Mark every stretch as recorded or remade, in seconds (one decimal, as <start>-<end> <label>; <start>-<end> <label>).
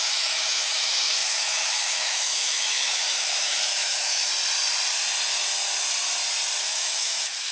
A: 0.0-4.3 remade; 4.3-6.7 recorded; 6.7-7.5 remade